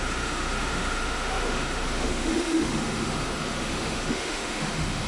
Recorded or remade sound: remade